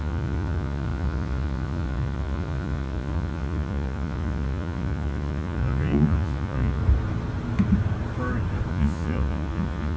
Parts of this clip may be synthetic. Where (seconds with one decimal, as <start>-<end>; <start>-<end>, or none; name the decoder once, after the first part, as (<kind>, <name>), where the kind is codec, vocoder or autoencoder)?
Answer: 0.0-6.8 (vocoder, Vocos); 8.7-10.0